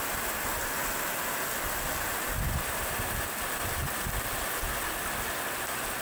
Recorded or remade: recorded